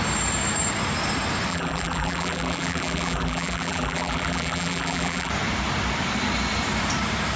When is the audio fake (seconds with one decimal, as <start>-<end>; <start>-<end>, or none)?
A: 1.5-5.3